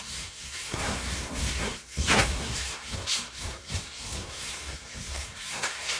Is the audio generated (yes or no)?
yes